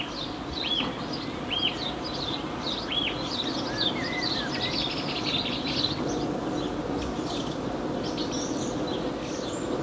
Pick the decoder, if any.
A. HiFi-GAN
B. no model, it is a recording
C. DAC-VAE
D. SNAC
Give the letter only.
B